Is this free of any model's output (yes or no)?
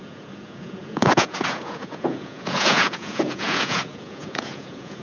no